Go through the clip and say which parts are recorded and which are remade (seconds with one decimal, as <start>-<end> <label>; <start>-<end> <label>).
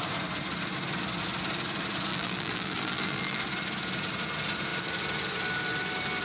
0.0-2.1 recorded; 2.1-3.4 remade; 3.4-6.2 recorded